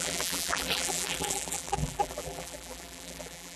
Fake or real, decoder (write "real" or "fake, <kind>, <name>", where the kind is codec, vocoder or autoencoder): fake, vocoder, BigVGAN v2